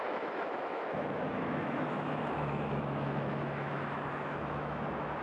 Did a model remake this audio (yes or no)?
yes